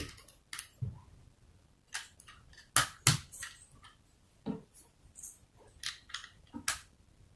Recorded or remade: recorded